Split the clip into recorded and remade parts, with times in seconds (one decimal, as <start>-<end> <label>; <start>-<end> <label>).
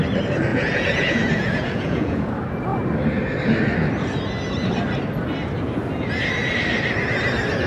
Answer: 0.0-0.5 recorded; 0.5-2.3 remade; 2.3-7.7 recorded